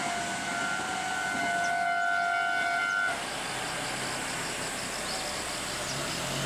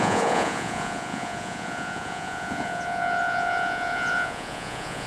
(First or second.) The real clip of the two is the first